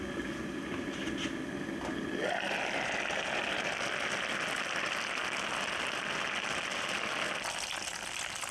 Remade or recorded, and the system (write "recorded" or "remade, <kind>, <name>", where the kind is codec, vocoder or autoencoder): recorded